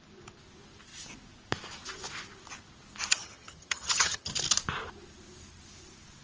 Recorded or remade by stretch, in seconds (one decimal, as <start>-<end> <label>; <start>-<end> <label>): 0.0-3.1 recorded; 3.1-4.3 remade; 4.3-6.2 recorded